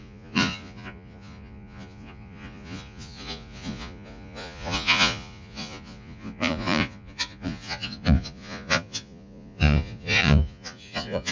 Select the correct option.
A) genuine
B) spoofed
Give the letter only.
B